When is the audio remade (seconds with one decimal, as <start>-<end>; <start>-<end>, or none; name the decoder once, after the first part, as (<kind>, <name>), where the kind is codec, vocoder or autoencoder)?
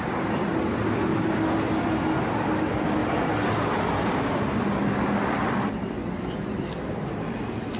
none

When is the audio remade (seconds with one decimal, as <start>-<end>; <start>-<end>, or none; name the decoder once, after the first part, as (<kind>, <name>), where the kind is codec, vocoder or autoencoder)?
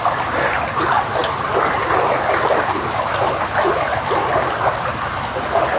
none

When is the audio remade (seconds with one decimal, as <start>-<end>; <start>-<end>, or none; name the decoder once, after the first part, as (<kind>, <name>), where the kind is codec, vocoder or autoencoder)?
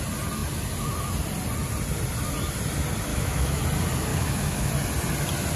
3.1-3.6 (autoencoder, DAC-VAE); 4.1-4.7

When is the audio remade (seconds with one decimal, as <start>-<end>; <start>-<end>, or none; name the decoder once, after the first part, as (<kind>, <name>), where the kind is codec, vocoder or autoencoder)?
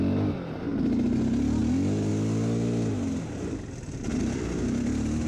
none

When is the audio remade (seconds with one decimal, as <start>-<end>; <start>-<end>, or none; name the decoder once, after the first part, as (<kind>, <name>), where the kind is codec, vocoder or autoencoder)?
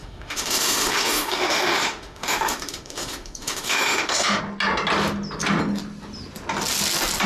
0.0-4.4 (autoencoder, DAC-VAE)